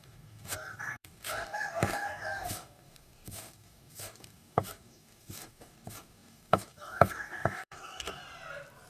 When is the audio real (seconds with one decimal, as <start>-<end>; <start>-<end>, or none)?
8.2-8.9